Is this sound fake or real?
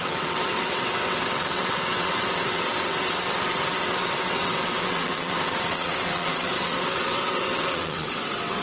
fake